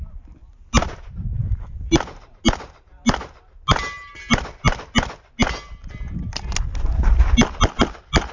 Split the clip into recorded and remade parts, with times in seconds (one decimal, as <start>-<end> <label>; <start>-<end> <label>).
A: 0.0-8.3 recorded